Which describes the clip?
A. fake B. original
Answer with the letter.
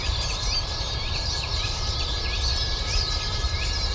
A